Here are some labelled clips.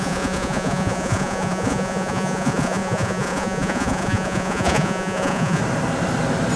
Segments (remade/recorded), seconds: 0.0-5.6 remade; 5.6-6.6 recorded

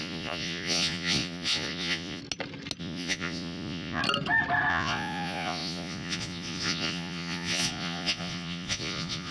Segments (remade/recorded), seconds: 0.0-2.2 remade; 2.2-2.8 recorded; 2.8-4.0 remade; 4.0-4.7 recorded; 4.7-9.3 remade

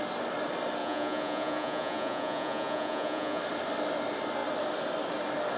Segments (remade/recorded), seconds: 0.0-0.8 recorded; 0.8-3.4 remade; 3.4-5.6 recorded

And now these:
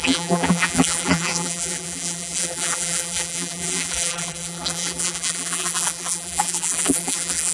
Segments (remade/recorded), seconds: 0.0-7.5 remade